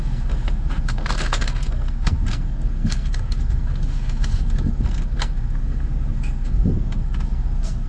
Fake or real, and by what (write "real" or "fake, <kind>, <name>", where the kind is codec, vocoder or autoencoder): fake, codec, SNAC